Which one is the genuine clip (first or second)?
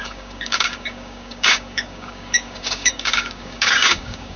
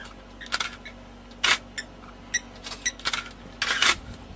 second